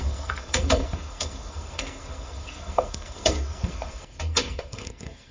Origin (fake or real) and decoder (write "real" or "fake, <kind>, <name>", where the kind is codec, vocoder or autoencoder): fake, codec, SNAC